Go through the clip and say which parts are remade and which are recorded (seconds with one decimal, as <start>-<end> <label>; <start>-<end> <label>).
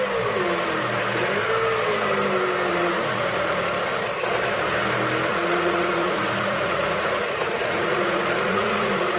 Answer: 0.0-2.7 recorded; 2.7-3.6 remade; 3.6-5.3 recorded; 5.3-9.2 remade